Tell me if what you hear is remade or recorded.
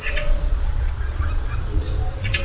remade